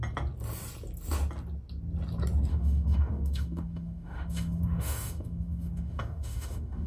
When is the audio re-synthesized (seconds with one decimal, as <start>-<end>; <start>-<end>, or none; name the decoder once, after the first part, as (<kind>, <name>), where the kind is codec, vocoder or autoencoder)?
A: 2.5-6.9 (autoencoder, DAC-VAE)